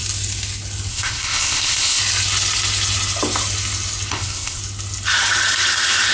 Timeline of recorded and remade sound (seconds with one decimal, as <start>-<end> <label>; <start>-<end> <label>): 0.0-0.9 recorded; 0.9-2.0 remade; 2.0-4.1 recorded; 4.1-4.6 remade; 4.6-6.1 recorded

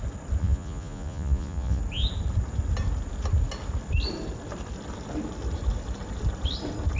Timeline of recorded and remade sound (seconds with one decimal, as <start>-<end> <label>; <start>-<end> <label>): 0.0-0.4 recorded; 0.4-1.8 remade; 1.8-7.0 recorded

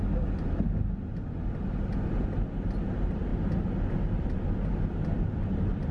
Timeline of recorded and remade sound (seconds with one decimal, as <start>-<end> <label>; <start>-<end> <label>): 0.0-5.9 recorded